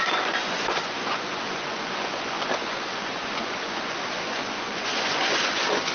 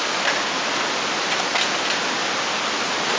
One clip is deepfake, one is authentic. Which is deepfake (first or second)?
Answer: first